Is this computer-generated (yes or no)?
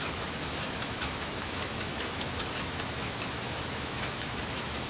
yes